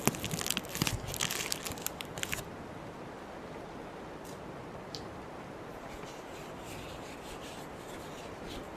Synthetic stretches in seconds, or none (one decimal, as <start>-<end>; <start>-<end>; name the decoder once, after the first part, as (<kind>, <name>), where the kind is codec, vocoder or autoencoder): none